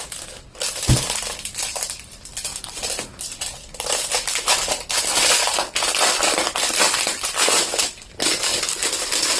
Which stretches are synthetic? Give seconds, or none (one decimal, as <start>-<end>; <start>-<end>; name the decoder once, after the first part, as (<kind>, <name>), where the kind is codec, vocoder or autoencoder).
1.7-2.6 (vocoder, BigVGAN v2)